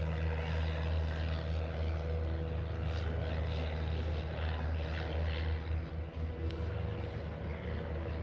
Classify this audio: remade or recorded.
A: recorded